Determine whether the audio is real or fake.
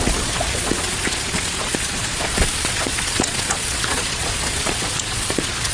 fake